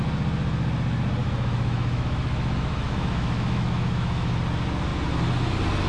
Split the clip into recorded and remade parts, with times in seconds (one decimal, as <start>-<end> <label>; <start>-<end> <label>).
0.0-1.2 recorded; 1.2-4.3 remade; 4.3-5.9 recorded